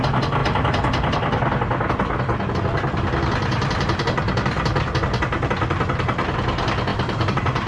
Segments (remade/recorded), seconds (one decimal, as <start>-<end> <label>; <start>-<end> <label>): 0.0-3.5 recorded; 3.5-5.5 remade; 5.5-6.9 recorded; 6.9-7.7 remade